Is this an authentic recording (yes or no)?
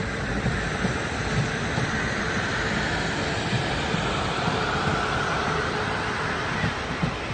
no